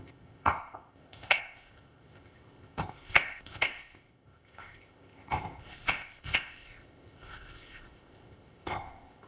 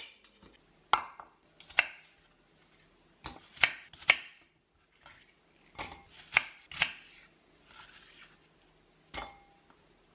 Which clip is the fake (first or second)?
first